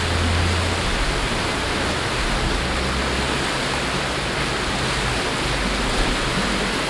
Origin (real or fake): real